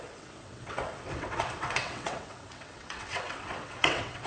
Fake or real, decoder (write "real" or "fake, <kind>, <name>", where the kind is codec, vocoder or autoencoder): fake, vocoder, WaveNeXt